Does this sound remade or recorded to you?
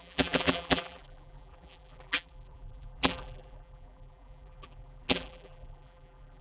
remade